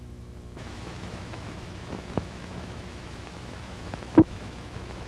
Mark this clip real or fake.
fake